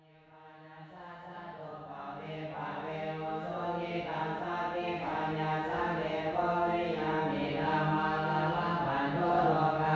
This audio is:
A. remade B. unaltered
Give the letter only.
A